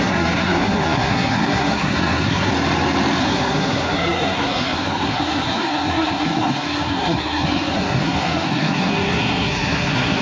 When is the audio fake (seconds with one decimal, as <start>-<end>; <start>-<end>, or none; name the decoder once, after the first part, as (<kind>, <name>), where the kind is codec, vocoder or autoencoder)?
0.0-2.5 (codec, SNAC); 3.2-10.2